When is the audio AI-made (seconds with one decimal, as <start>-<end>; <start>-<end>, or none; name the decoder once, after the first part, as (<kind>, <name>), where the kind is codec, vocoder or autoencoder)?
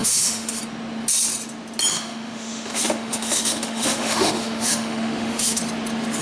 0.0-0.6 (autoencoder, DAC-VAE); 1.9-5.6